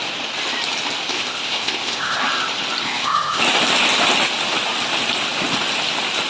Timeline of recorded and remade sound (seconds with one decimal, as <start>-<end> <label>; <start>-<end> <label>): 0.0-1.1 recorded; 1.1-2.2 remade; 2.2-2.8 recorded; 2.8-3.4 remade; 3.4-6.3 recorded